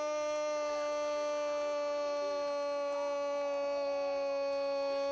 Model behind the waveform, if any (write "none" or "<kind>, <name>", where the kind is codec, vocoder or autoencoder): none